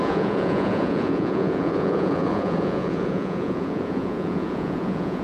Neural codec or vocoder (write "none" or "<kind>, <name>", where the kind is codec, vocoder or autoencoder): vocoder, Vocos